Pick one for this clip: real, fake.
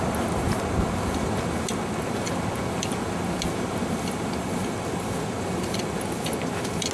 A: real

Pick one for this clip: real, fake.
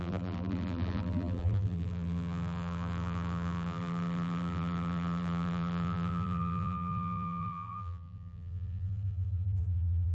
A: fake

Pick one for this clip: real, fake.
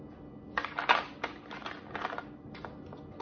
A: real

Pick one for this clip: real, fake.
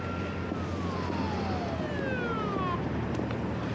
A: real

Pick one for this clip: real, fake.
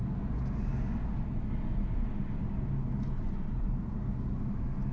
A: real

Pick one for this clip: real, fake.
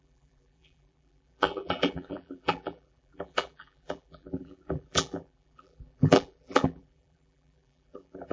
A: fake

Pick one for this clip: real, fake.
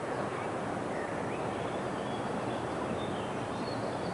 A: real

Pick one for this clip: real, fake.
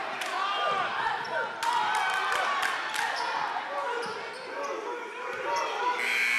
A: real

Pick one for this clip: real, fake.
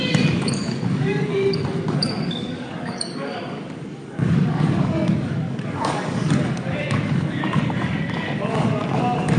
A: fake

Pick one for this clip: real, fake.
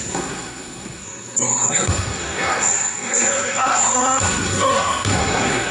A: fake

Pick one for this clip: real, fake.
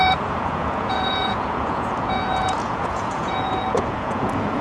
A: fake